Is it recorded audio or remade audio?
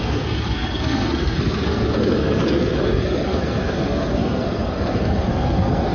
remade